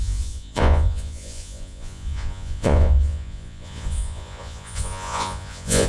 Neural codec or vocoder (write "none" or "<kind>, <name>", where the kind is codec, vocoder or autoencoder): vocoder, Vocos